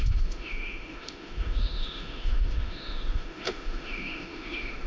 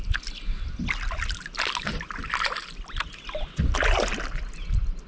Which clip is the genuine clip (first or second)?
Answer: second